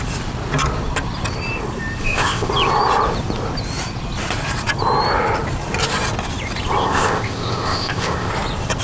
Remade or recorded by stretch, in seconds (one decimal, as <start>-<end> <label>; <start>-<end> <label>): 0.0-2.0 recorded; 2.0-2.5 remade; 2.5-6.8 recorded; 6.8-8.3 remade; 8.3-8.8 recorded